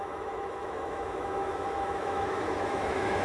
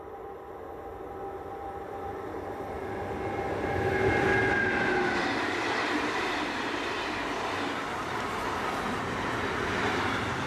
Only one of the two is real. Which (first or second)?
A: second